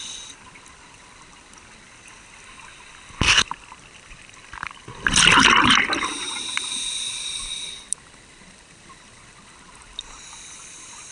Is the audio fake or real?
real